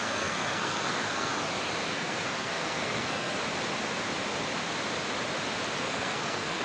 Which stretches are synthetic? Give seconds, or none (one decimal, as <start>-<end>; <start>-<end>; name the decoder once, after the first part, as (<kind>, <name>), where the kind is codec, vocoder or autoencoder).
0.0-1.3 (codec, SNAC); 1.9-3.4; 5.8-6.6